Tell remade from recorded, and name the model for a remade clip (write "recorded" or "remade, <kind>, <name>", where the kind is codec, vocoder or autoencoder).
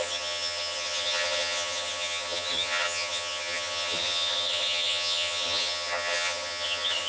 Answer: remade, vocoder, HiFi-GAN